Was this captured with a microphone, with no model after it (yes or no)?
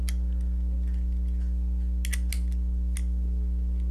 yes